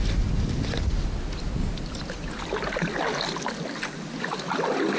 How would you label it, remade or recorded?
recorded